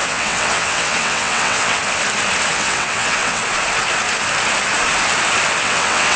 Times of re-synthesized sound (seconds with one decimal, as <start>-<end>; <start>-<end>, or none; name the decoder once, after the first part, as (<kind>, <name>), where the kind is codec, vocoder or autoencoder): 0.0-1.8 (vocoder, WaveNeXt); 2.5-3.4; 5.6-6.2